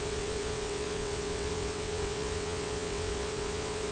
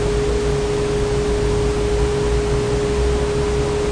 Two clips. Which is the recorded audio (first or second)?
second